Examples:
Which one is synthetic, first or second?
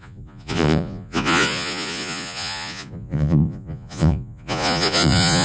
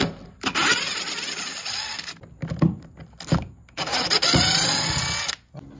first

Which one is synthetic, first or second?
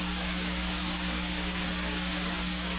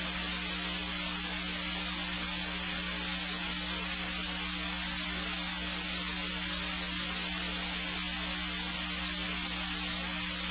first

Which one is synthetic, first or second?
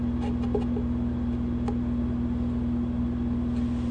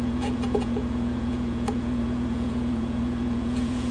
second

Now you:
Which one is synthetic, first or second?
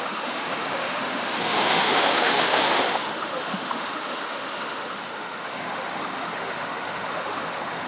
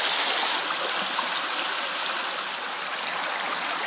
first